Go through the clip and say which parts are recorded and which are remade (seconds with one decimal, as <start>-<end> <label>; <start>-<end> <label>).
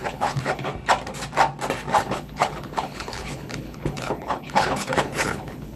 0.0-0.7 remade; 0.7-2.0 recorded; 2.0-5.8 remade